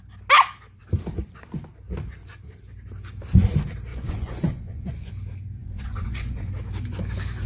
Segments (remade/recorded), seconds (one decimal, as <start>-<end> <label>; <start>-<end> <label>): 0.0-3.9 recorded; 3.9-5.1 remade; 5.1-5.6 recorded; 5.6-6.5 remade; 6.5-7.5 recorded